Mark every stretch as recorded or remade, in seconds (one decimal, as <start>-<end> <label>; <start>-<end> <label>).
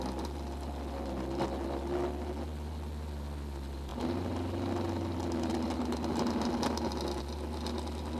0.0-8.2 recorded